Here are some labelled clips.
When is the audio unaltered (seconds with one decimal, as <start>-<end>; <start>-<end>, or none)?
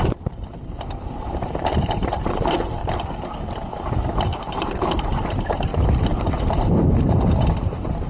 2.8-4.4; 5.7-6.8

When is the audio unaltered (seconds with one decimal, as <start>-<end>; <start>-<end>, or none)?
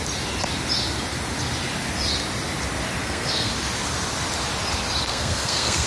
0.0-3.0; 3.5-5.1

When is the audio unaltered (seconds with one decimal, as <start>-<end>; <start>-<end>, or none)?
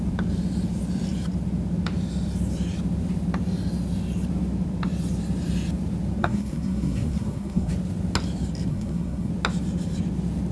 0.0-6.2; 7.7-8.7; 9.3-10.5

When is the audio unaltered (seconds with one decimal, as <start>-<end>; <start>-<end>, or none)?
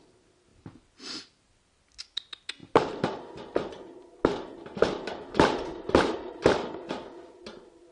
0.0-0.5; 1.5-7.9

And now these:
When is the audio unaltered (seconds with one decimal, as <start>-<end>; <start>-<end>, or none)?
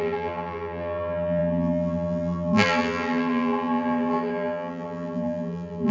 none